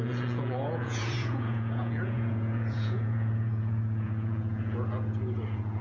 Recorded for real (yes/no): no